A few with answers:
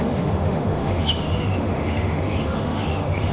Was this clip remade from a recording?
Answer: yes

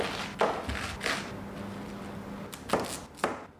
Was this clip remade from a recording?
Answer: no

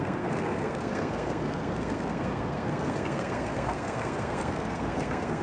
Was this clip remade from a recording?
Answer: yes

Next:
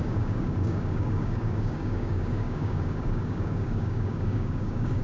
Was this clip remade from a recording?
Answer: yes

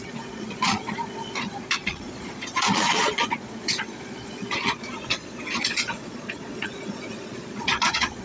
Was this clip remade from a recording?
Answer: yes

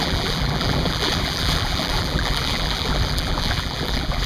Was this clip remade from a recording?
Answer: yes